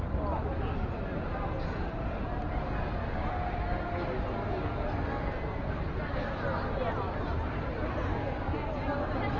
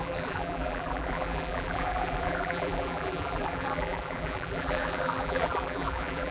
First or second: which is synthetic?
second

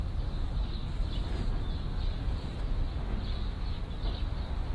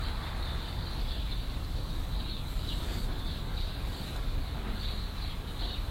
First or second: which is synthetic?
second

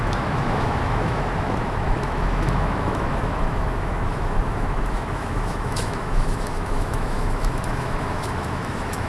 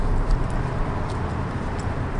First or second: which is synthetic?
first